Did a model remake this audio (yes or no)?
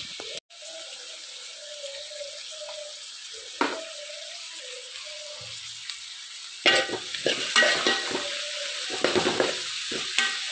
no